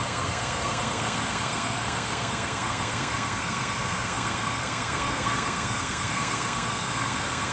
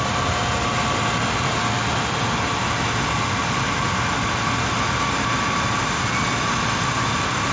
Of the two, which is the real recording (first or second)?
second